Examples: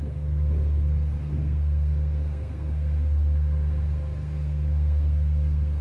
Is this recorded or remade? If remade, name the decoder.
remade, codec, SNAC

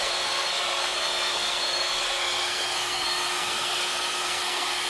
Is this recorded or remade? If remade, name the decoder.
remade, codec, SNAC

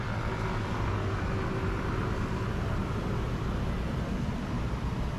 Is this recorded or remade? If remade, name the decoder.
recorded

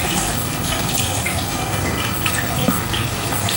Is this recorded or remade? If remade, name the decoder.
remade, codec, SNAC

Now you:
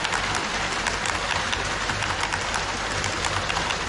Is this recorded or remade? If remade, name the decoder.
recorded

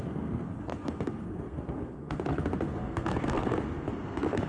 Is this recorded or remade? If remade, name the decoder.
remade, codec, SNAC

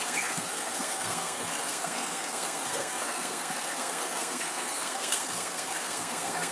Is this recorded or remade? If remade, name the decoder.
remade, codec, SNAC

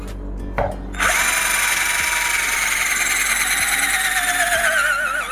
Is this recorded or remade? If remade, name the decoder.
recorded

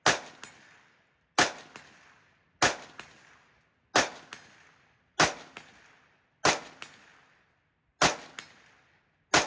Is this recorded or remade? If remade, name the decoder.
recorded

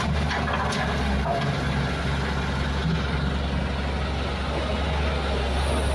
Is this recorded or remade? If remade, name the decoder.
recorded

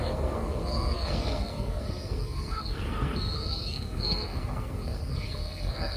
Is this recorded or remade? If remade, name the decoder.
remade, codec, SNAC